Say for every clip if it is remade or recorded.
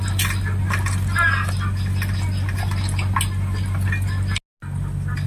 recorded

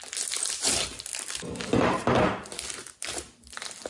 recorded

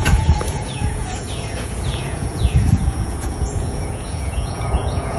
remade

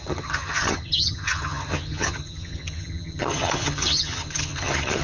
remade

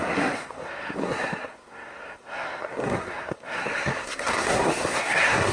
remade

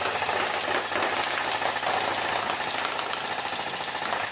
recorded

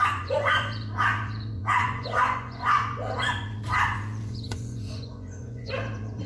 remade